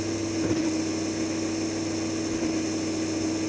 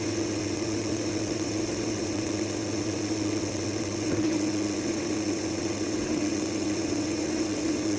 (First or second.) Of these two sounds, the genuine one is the first